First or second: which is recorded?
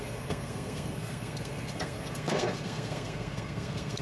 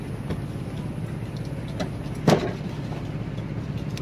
second